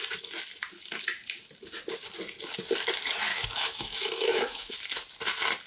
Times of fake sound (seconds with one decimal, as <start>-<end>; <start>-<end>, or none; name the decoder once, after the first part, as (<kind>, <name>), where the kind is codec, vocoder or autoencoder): 3.3-4.7 (autoencoder, DAC-VAE)